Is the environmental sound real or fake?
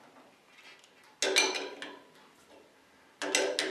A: real